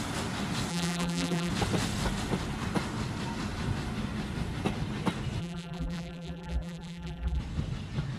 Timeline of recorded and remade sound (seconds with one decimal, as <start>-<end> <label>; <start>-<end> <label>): 0.0-0.7 recorded; 0.7-1.5 remade; 1.5-5.4 recorded; 5.4-7.4 remade; 7.4-8.2 recorded